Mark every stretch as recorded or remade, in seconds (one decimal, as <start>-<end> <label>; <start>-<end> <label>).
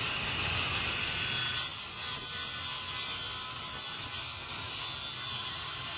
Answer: 0.0-6.0 recorded